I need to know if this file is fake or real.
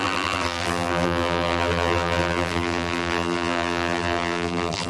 fake